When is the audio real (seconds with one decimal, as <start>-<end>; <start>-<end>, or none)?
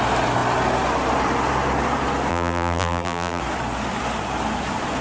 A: 0.0-2.3; 3.4-5.0